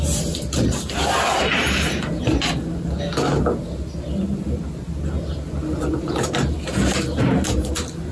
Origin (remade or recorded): recorded